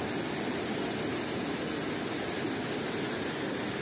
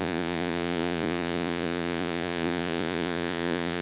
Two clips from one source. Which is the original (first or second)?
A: first